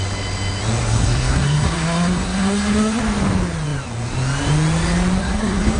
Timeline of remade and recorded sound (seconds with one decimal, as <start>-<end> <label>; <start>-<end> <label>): 0.0-0.8 recorded; 0.8-3.0 remade; 3.0-5.2 recorded; 5.2-5.8 remade